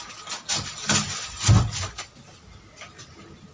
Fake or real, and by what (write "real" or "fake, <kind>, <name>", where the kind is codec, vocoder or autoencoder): real